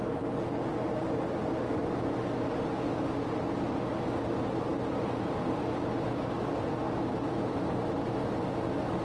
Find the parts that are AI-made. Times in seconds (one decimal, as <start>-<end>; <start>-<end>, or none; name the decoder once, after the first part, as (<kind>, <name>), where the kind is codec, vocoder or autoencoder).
none